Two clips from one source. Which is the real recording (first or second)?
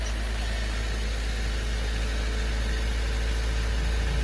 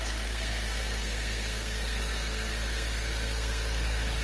first